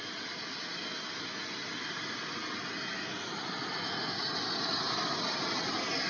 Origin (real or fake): real